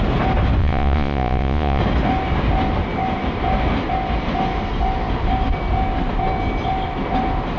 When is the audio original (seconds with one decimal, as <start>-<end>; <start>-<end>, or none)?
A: 0.0-0.6; 1.8-7.6